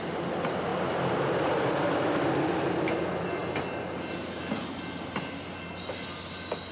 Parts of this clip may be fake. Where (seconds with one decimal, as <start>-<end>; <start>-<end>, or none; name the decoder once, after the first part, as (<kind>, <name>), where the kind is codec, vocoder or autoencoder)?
none